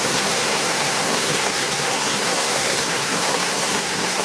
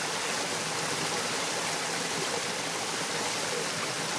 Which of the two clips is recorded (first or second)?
second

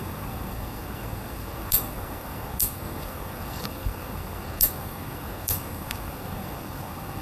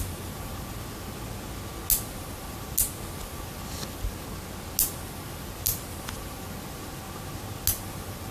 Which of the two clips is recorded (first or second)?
second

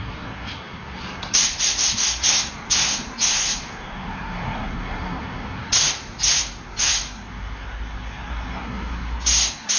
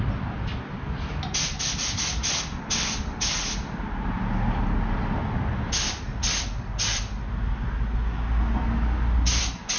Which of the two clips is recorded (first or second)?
second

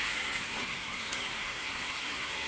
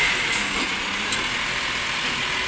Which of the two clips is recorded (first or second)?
second